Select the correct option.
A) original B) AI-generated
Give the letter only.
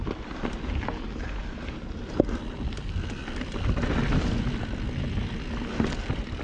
A